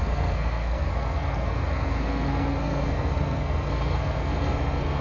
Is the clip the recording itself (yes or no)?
no